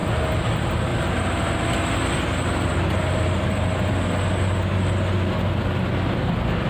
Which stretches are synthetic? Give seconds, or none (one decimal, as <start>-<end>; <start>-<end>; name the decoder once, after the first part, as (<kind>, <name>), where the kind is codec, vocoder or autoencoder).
0.0-0.5 (vocoder, BigVGAN v2); 0.9-3.4